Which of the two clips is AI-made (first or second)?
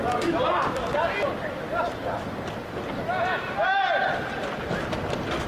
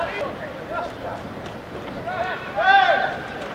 second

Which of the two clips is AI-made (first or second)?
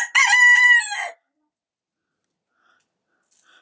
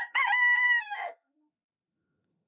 second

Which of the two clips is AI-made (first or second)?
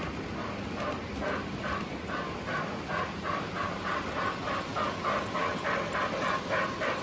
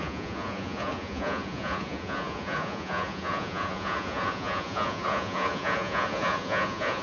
second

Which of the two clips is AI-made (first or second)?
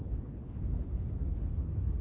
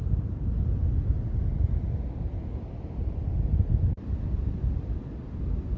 first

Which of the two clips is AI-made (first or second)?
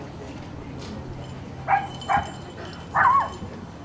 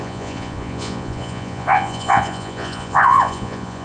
second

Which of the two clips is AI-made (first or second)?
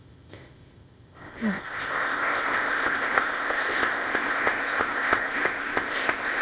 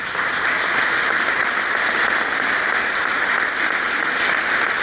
first